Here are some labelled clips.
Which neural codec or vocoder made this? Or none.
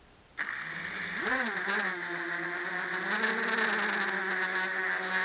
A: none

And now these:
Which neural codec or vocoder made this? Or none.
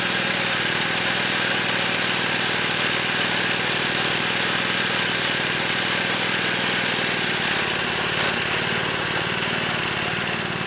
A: none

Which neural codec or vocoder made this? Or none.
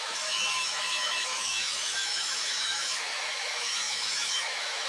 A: autoencoder, DAC-VAE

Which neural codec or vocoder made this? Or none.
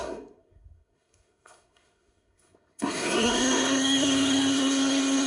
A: codec, SNAC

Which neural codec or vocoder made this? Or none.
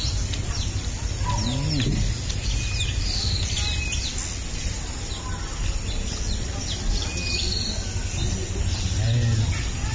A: none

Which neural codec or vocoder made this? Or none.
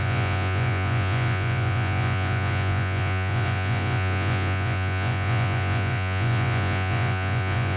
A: vocoder, Vocos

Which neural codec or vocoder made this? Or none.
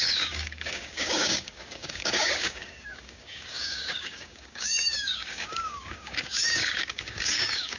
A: codec, DAC